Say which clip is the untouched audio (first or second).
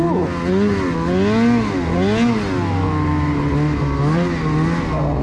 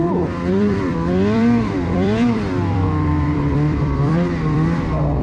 first